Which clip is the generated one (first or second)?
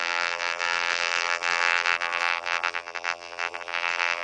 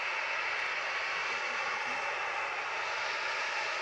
first